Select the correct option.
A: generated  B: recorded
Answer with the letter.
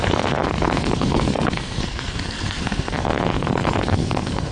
A